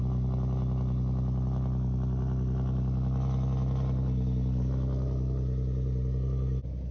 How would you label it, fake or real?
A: real